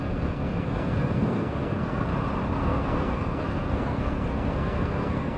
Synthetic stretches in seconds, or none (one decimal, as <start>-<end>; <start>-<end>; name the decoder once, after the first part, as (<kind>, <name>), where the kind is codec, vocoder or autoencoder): 0.0-2.1 (codec, SNAC); 2.6-5.4